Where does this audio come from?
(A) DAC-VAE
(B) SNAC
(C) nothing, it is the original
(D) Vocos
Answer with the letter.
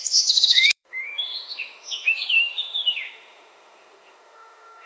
A